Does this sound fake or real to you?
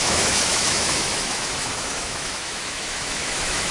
fake